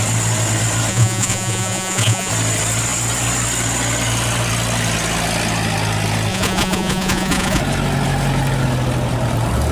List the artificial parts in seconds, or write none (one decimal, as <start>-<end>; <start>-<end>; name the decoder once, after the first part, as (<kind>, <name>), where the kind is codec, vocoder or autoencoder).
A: 0.9-2.3 (vocoder, Vocos); 6.3-7.6